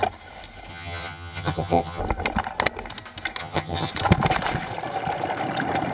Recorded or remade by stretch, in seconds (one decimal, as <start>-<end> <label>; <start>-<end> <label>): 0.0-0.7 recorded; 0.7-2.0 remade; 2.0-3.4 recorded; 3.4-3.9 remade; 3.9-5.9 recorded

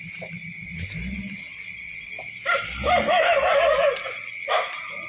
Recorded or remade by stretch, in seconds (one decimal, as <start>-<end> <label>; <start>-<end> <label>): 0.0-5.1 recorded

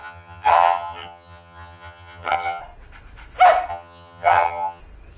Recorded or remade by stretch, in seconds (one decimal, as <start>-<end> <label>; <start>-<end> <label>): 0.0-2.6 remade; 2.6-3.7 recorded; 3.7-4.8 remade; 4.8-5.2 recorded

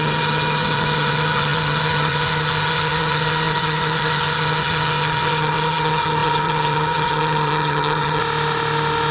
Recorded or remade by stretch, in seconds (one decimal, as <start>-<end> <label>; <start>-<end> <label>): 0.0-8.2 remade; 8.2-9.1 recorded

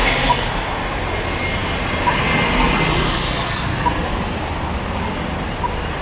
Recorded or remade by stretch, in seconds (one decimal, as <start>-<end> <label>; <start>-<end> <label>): 0.0-6.0 recorded